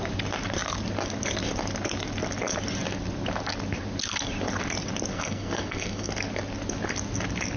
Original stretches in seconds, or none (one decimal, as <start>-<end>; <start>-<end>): 0.0-5.1; 6.1-7.6